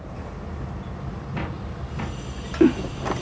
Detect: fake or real real